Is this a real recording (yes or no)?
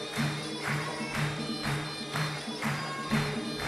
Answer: no